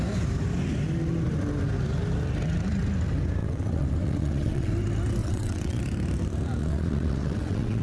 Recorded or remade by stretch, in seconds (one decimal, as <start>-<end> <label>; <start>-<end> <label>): 0.0-3.4 recorded; 3.4-4.7 remade; 4.7-5.2 recorded; 5.2-5.8 remade; 5.8-6.6 recorded; 6.6-7.8 remade